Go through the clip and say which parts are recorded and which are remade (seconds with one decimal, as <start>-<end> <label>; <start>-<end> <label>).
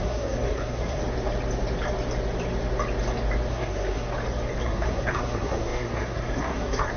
0.0-1.0 remade; 1.0-3.5 recorded; 3.5-4.1 remade; 4.1-4.6 recorded; 4.6-7.0 remade